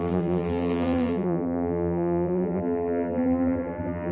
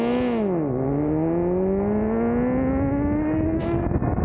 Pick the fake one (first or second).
first